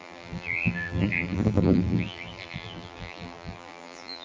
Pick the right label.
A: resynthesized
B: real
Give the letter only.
A